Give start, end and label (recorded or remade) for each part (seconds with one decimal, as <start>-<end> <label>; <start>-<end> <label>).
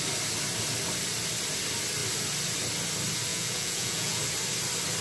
0.0-3.3 recorded; 3.3-4.2 remade; 4.2-5.0 recorded